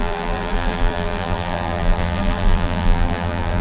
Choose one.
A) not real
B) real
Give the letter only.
A